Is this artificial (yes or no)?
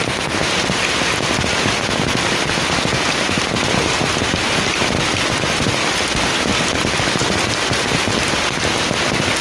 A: no